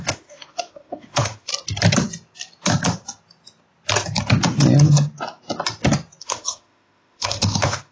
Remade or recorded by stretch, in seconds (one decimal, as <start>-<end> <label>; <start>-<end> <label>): 0.0-1.5 remade; 1.5-6.2 recorded; 6.2-7.9 remade